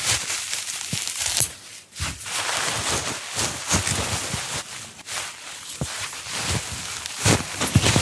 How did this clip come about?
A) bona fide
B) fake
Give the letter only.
A